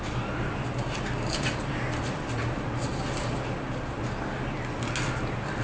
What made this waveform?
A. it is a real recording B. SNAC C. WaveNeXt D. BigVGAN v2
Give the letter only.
A